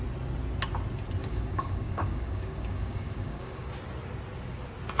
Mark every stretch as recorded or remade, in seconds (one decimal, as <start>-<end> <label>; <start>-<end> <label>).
0.0-1.2 recorded; 1.2-3.7 remade; 3.7-5.0 recorded